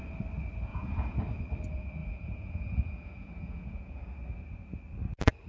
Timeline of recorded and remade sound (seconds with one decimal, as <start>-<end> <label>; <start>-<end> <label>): 0.0-0.7 recorded; 0.7-1.2 remade; 1.2-2.0 recorded; 2.0-4.0 remade; 4.0-5.5 recorded